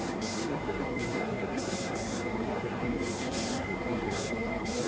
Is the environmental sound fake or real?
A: fake